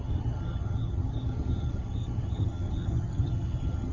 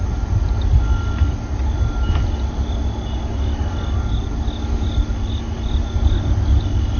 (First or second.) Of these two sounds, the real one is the second